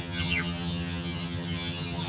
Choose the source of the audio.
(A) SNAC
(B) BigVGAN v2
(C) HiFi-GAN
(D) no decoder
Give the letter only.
C